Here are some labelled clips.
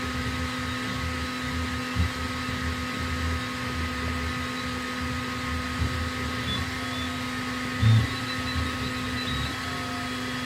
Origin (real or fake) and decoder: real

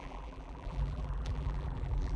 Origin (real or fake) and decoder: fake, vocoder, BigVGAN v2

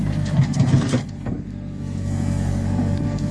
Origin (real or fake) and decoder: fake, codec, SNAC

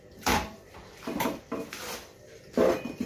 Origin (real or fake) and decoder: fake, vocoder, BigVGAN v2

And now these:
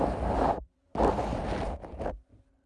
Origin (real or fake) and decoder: fake, vocoder, BigVGAN v2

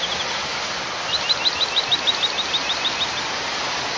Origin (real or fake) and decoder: real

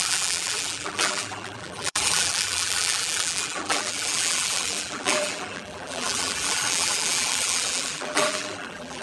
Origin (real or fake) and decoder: fake, vocoder, BigVGAN v2